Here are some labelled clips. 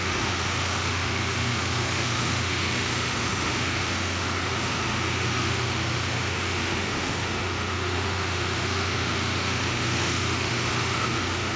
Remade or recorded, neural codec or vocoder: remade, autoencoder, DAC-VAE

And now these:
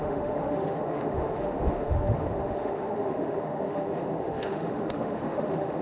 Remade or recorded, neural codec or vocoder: remade, autoencoder, DAC-VAE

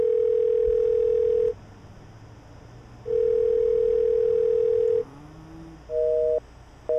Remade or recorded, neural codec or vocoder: recorded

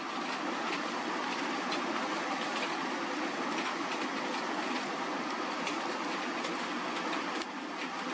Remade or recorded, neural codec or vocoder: recorded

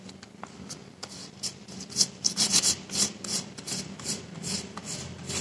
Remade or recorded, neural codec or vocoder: recorded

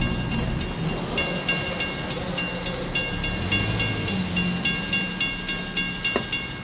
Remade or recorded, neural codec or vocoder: recorded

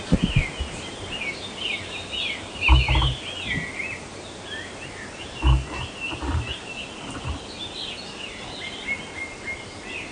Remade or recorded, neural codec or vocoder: recorded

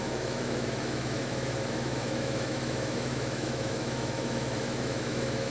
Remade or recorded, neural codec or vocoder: remade, autoencoder, DAC-VAE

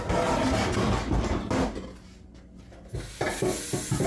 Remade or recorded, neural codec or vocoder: recorded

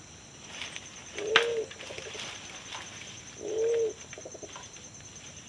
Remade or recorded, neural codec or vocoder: recorded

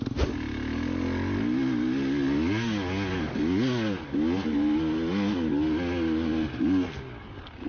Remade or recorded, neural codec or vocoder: recorded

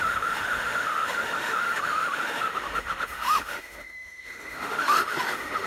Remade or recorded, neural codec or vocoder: remade, autoencoder, DAC-VAE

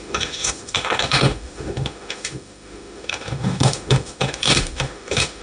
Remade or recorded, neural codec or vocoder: remade, autoencoder, DAC-VAE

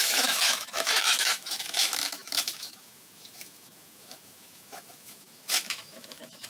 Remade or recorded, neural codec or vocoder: remade, autoencoder, DAC-VAE